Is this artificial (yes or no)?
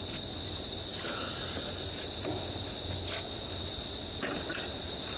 no